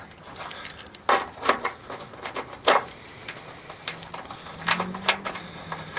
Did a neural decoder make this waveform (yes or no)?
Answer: no